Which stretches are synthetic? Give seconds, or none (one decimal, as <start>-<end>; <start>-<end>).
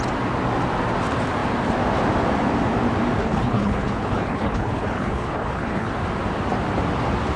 3.2-5.9